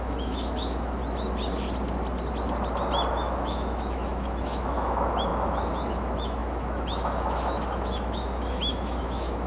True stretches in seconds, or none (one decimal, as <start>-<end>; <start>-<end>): 1.0-3.1